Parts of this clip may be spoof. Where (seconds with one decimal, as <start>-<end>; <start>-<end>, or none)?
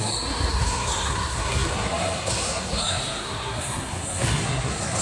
0.0-5.0